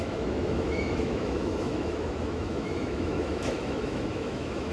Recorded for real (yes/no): no